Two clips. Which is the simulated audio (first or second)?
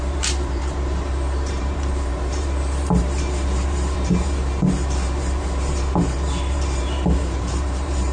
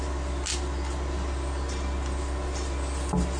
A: first